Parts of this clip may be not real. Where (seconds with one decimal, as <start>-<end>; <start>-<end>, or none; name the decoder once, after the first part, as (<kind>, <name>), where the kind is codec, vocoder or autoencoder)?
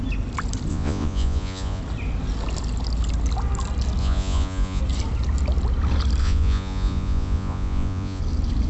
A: 0.7-1.8 (vocoder, Vocos); 4.0-4.8; 6.2-8.2